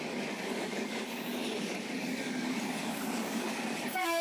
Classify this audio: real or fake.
fake